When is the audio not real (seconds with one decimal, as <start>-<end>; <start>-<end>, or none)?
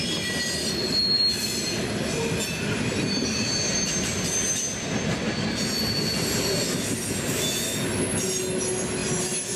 none